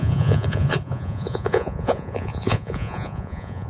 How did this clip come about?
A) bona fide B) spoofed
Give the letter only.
B